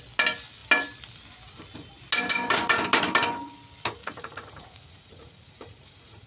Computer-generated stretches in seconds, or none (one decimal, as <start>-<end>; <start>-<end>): 4.0-6.3